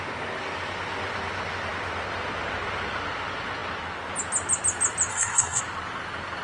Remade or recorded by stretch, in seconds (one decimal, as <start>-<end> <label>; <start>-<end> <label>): 0.0-5.1 recorded; 5.1-5.6 remade; 5.6-6.4 recorded

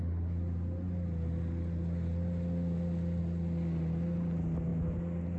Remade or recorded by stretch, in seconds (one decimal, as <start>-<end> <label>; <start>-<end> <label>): 0.0-5.4 recorded

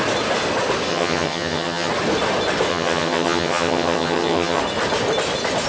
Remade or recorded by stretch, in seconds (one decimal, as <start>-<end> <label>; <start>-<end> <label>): 0.0-0.9 recorded; 0.9-1.9 remade; 1.9-2.7 recorded; 2.7-4.6 remade; 4.6-5.7 recorded

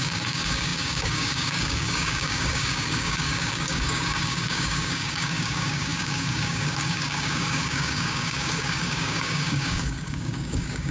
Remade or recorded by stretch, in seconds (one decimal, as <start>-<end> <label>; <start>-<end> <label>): 0.0-10.9 remade